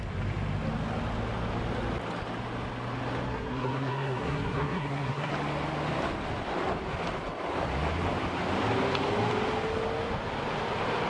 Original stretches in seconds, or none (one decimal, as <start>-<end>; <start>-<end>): 0.0-3.3; 5.3-11.1